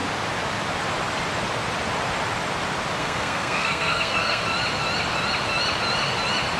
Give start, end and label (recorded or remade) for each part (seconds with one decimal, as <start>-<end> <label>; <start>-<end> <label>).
0.0-3.0 recorded; 3.0-4.4 remade; 4.4-6.6 recorded